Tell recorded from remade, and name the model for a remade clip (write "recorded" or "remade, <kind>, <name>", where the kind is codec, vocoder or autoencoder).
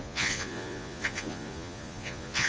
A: remade, vocoder, Vocos